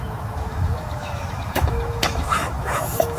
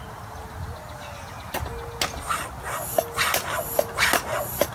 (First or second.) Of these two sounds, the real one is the second